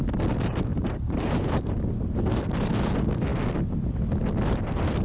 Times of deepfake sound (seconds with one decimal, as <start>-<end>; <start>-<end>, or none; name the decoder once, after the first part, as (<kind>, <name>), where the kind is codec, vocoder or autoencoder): 0.7-1.9 (vocoder, BigVGAN v2)